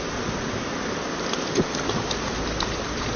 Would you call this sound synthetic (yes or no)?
no